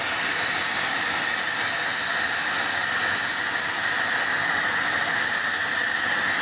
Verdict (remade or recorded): recorded